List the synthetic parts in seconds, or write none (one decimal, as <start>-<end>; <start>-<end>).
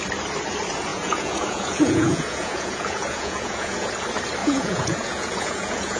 0.9-3.9; 4.4-6.0